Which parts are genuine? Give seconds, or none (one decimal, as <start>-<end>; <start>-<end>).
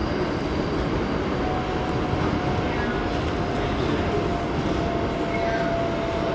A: 0.0-6.3